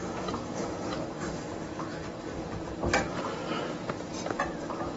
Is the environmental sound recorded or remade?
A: recorded